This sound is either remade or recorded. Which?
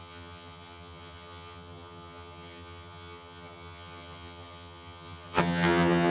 remade